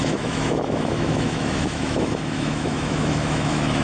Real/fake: fake